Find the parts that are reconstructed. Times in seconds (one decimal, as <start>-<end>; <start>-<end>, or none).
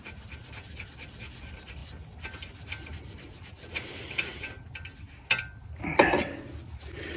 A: 2.9-3.7